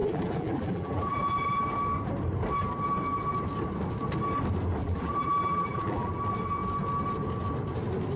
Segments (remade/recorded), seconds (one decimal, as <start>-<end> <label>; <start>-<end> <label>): 0.0-1.2 remade; 1.2-4.8 recorded; 4.8-6.1 remade; 6.1-8.2 recorded